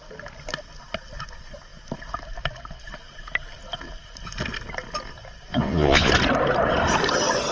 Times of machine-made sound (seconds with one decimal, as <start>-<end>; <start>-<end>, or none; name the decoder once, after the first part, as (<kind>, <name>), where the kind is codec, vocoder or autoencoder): 5.5-6.1 (vocoder, Vocos)